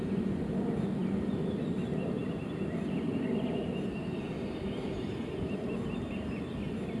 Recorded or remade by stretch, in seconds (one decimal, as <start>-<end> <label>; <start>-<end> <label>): 0.0-1.0 recorded; 1.0-5.2 remade; 5.2-7.0 recorded